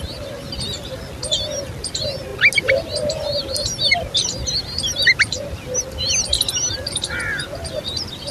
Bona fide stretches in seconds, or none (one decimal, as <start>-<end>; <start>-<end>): 0.0-8.3